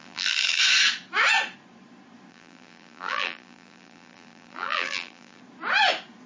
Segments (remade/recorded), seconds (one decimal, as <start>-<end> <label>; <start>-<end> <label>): 0.0-0.6 remade; 0.6-2.3 recorded; 2.3-5.4 remade; 5.4-6.3 recorded